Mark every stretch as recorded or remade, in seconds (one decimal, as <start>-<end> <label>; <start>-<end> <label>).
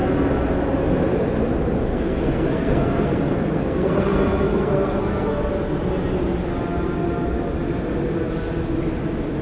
0.0-1.9 recorded; 1.9-5.5 remade; 5.5-9.4 recorded